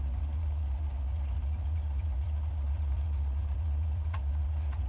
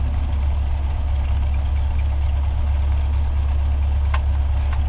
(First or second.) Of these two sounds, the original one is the second